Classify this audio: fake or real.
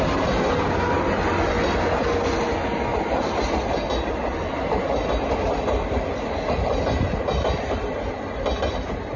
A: real